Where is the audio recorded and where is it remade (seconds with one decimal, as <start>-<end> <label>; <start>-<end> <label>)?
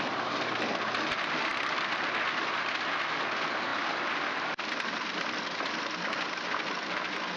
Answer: 0.0-1.5 recorded; 1.5-2.3 remade; 2.3-3.7 recorded; 3.7-5.4 remade; 5.4-7.4 recorded